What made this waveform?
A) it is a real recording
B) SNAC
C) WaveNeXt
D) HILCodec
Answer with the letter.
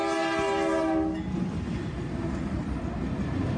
A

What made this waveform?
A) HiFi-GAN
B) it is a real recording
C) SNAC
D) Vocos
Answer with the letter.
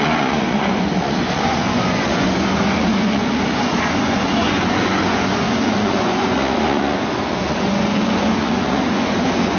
D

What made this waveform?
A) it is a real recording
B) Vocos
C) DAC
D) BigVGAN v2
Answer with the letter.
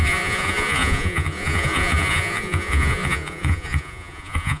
B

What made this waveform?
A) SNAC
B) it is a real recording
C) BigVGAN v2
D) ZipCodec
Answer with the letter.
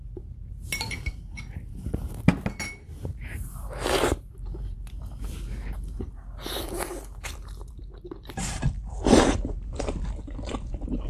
C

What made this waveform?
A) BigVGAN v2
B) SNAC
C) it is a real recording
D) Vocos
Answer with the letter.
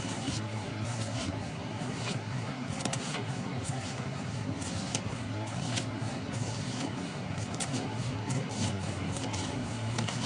B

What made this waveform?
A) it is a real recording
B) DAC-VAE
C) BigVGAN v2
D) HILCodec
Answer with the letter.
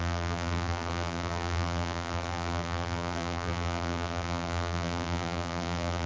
C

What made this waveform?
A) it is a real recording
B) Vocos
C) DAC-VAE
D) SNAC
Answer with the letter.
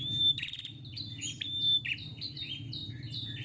A